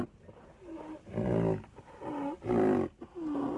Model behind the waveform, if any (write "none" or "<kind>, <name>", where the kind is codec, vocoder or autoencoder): none